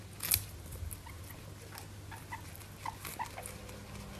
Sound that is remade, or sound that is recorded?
recorded